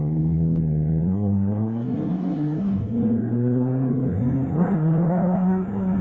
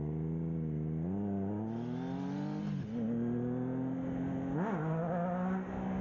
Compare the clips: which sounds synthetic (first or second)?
first